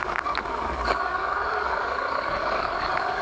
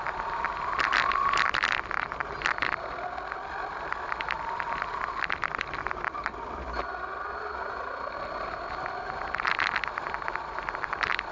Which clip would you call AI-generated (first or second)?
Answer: first